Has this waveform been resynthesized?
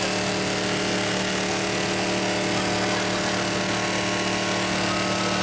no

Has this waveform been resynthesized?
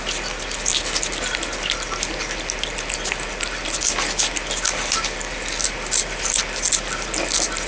no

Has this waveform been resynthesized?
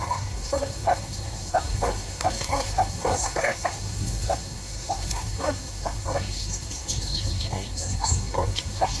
yes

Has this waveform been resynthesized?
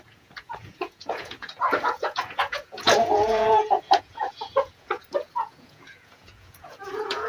yes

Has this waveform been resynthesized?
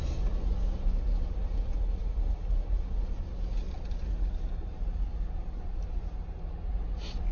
no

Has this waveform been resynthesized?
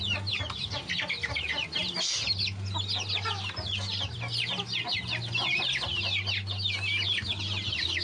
no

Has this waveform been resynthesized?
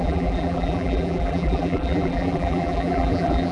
yes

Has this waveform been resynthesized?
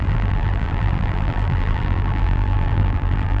yes